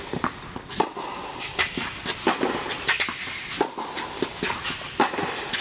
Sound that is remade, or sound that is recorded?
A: recorded